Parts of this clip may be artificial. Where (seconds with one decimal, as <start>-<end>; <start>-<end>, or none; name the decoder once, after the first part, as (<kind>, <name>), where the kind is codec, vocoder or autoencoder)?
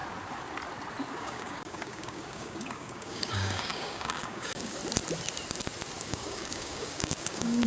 1.1-4.8 (codec, DAC); 6.0-7.7